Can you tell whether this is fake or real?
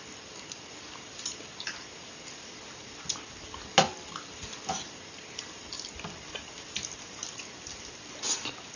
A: real